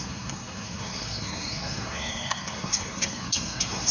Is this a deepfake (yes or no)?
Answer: yes